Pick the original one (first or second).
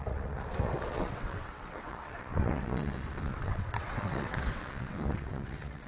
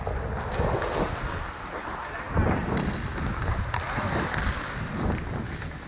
second